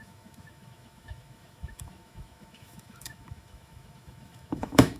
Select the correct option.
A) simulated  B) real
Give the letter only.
A